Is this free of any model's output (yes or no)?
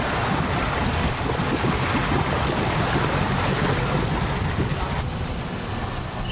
yes